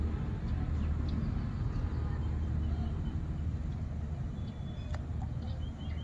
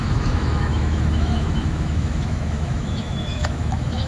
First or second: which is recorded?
first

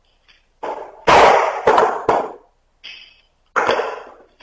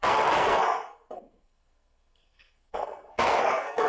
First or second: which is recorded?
first